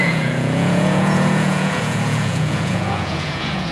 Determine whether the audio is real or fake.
fake